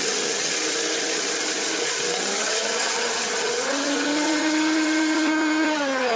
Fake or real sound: fake